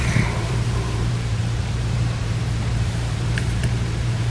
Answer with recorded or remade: remade